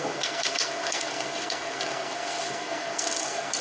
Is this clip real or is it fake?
fake